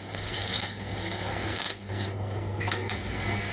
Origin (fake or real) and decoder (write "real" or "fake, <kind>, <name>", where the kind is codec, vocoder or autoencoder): fake, codec, SNAC